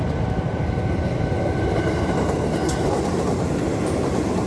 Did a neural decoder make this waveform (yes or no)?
no